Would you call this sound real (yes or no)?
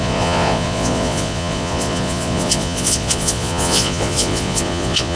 no